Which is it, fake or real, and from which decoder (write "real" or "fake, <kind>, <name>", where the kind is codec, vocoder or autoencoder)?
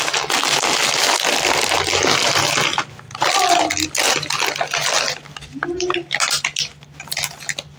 real